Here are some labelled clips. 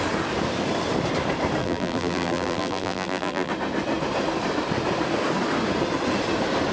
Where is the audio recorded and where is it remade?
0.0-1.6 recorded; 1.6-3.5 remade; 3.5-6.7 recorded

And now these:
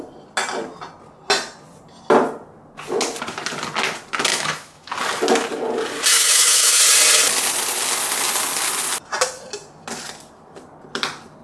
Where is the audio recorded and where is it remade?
0.0-4.3 recorded; 4.3-4.9 remade; 4.9-6.1 recorded; 6.1-6.8 remade; 6.8-11.4 recorded

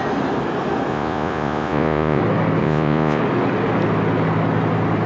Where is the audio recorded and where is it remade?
0.0-0.9 recorded; 0.9-2.2 remade; 2.2-2.6 recorded; 2.6-3.2 remade; 3.2-5.1 recorded

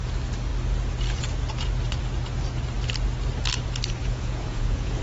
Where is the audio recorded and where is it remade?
0.0-4.0 recorded; 4.0-5.0 remade

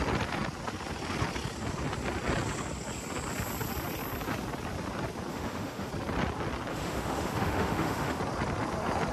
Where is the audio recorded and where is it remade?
0.0-5.3 recorded; 5.3-5.9 remade; 5.9-6.7 recorded; 6.7-8.2 remade; 8.2-9.1 recorded

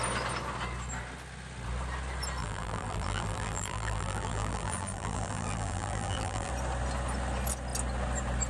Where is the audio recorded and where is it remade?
0.0-2.4 recorded; 2.4-6.5 remade; 6.5-8.5 recorded

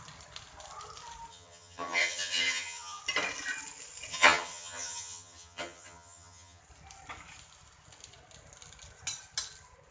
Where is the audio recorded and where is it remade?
0.0-1.3 recorded; 1.3-3.0 remade; 3.0-4.1 recorded; 4.1-6.6 remade; 6.6-9.9 recorded